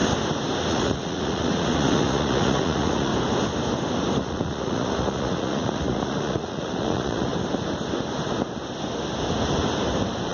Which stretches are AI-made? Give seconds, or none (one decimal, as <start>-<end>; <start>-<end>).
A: 0.7-3.1; 4.2-7.3